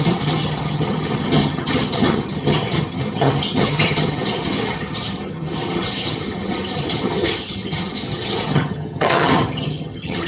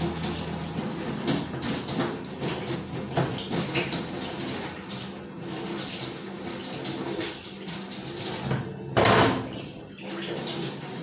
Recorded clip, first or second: second